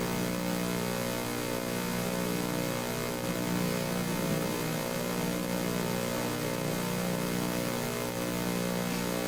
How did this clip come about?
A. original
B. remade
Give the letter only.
A